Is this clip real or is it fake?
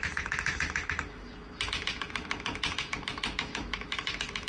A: fake